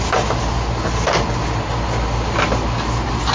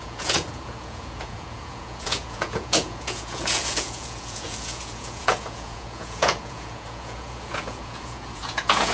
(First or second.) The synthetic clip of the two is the second